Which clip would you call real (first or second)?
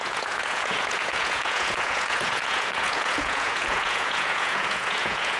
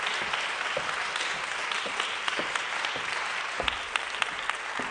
second